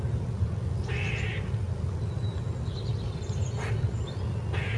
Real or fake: real